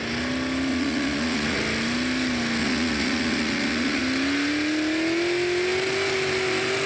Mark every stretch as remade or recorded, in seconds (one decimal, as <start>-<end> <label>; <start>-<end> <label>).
0.0-0.7 recorded; 0.7-1.6 remade; 1.6-2.6 recorded; 2.6-4.0 remade; 4.0-6.9 recorded

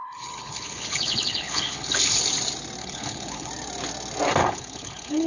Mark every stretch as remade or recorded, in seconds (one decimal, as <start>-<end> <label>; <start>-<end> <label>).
0.0-2.2 remade; 2.2-2.8 recorded; 2.8-3.5 remade; 3.5-4.4 recorded; 4.4-5.3 remade

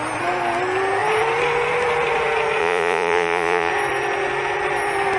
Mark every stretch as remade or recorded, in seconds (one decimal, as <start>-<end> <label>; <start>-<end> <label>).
0.0-2.6 recorded; 2.6-3.7 remade; 3.7-5.2 recorded